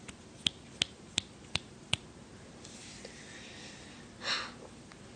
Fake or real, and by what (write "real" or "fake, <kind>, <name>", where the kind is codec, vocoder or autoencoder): real